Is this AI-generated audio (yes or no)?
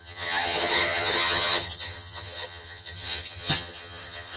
yes